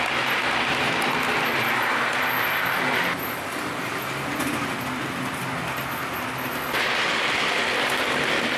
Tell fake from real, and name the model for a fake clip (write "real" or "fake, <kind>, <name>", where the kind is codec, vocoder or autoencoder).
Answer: real